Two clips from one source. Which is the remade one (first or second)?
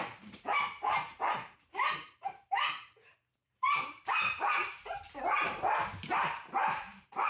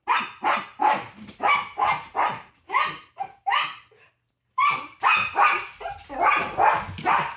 first